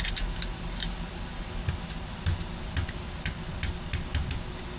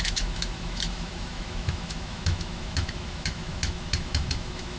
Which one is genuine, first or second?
first